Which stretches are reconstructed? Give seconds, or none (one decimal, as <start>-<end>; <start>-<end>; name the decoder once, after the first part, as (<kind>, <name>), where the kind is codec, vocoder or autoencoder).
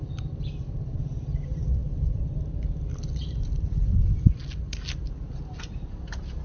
none